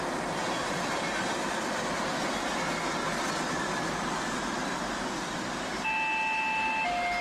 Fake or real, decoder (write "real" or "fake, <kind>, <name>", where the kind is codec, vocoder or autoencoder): real